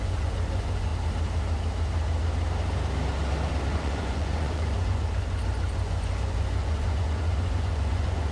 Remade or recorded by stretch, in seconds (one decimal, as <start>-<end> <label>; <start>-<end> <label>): 0.0-0.9 remade; 0.9-3.7 recorded; 3.7-8.3 remade